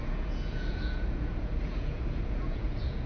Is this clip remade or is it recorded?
remade